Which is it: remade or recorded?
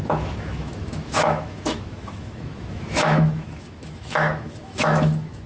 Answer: remade